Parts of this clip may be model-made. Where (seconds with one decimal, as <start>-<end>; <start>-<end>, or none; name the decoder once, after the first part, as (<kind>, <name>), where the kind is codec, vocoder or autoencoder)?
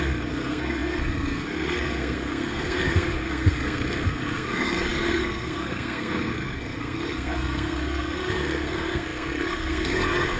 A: 0.0-10.4 (codec, SNAC)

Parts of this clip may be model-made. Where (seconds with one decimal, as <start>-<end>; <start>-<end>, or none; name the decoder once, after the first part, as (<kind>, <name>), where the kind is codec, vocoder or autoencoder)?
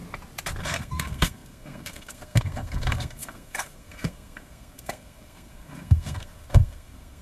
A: 0.6-7.2 (codec, SNAC)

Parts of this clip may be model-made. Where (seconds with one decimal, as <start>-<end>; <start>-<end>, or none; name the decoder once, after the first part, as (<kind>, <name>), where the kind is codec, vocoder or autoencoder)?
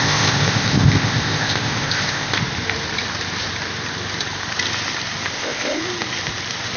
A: 0.0-2.4 (codec, ZipCodec); 5.3-5.8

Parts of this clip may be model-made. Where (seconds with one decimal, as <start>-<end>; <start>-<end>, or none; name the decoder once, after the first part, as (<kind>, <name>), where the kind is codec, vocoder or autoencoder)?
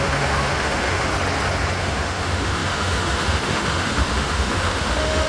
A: 0.0-1.1 (autoencoder, DAC-VAE); 1.8-5.3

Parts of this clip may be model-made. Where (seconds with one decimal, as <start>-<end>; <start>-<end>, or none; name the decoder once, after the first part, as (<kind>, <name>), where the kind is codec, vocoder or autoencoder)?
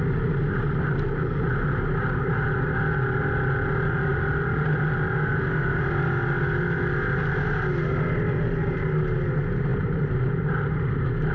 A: 4.1-4.7 (vocoder, BigVGAN v2); 9.7-10.7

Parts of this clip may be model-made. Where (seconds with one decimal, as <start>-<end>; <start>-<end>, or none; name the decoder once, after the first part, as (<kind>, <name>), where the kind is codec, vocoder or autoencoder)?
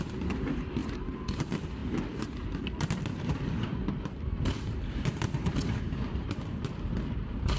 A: 0.0-7.6 (vocoder, BigVGAN v2)